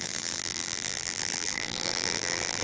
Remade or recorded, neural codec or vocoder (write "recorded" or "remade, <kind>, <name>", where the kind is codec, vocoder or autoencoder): remade, vocoder, BigVGAN v2